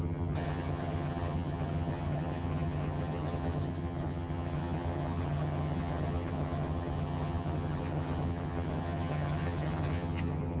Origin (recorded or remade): remade